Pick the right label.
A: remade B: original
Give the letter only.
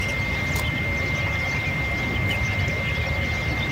B